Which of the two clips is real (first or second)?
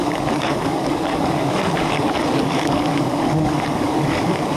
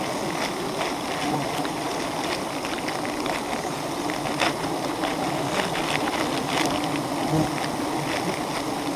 second